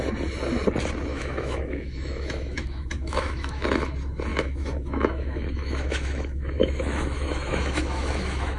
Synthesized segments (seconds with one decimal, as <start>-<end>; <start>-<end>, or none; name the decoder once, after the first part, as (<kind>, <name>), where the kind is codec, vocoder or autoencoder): 1.1-3.9 (autoencoder, DAC-VAE); 4.3-8.6